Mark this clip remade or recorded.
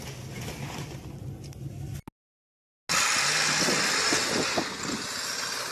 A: recorded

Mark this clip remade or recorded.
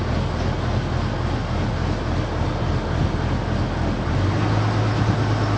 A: recorded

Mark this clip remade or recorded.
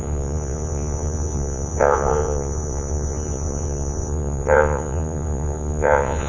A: remade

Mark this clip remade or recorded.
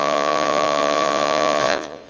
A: remade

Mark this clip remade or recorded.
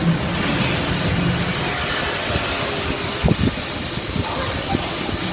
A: recorded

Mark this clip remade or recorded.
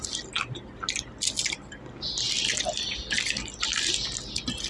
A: recorded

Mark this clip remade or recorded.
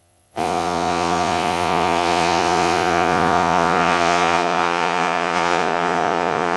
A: remade